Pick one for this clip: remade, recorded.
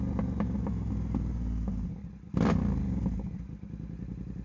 recorded